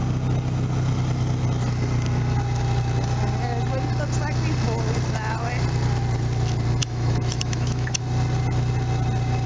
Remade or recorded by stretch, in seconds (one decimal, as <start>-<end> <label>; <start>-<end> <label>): 0.0-6.8 recorded; 6.8-8.0 remade; 8.0-9.5 recorded